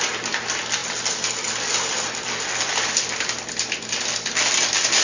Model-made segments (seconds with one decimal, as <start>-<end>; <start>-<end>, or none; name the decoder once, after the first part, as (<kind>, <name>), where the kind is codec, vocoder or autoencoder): none